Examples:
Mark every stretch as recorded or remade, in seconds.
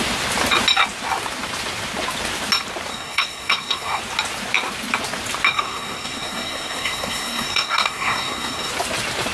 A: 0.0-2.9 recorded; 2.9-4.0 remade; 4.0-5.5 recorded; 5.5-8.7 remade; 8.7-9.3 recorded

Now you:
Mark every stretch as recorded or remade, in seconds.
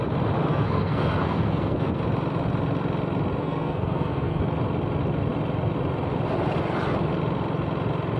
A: 0.0-0.5 recorded; 0.5-2.0 remade; 2.0-3.4 recorded; 3.4-4.4 remade; 4.4-8.2 recorded